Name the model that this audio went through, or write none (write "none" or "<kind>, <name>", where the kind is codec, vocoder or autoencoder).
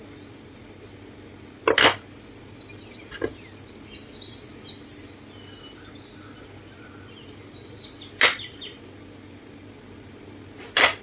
none